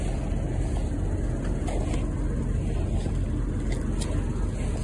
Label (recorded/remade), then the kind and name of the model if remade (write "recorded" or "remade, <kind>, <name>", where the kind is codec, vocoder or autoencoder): recorded